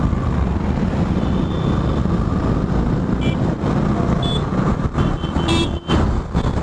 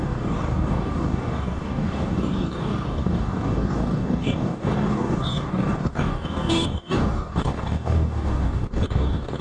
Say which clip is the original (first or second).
first